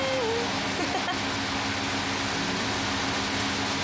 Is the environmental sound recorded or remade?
recorded